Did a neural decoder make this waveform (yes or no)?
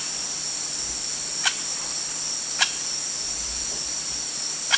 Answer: no